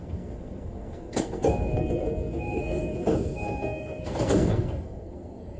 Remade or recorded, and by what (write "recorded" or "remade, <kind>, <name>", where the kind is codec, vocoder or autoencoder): remade, codec, SNAC